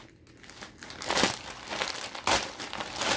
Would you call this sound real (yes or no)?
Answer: yes